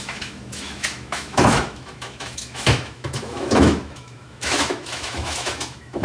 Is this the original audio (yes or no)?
no